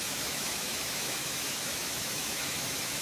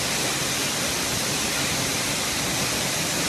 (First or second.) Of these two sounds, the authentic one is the second